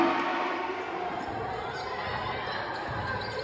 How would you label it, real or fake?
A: real